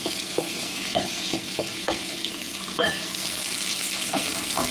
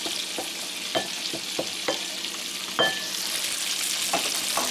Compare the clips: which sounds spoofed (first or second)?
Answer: first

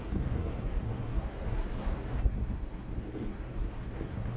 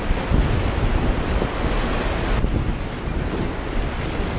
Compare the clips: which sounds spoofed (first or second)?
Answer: first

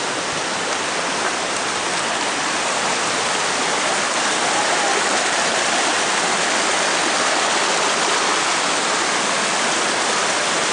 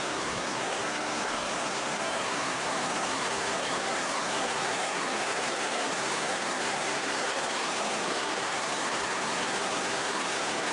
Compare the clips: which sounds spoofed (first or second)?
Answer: second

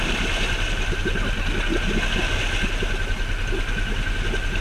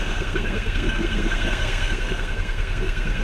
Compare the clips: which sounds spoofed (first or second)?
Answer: second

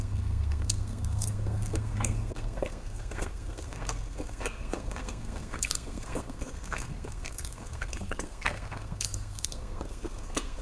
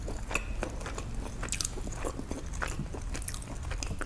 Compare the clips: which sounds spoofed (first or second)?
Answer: first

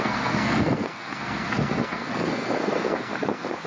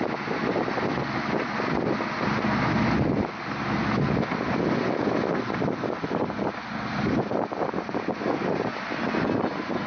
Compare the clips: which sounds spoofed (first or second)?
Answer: first